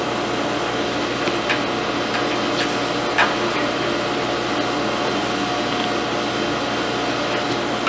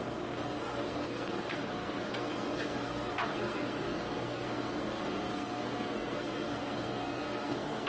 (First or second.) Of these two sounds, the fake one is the second